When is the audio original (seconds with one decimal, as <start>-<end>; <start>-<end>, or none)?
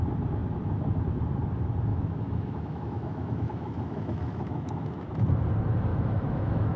0.0-1.9; 5.1-5.9